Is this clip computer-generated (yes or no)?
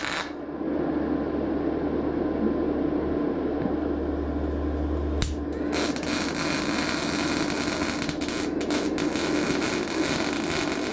no